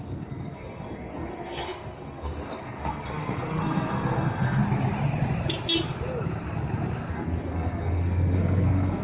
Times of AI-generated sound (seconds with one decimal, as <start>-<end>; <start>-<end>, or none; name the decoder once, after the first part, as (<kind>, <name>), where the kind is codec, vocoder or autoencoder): 0.0-4.6 (codec, SNAC); 7.1-9.0